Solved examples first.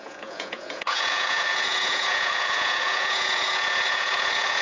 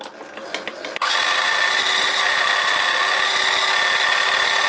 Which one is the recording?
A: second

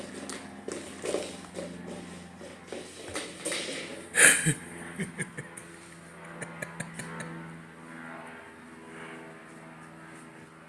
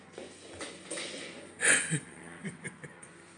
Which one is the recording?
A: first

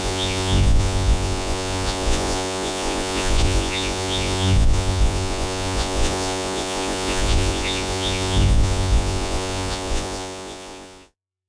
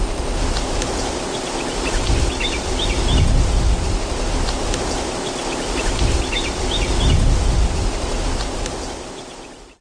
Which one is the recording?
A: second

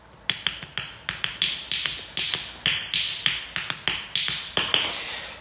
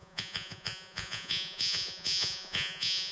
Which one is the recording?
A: first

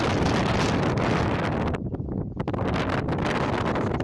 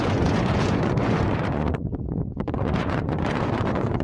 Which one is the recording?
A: first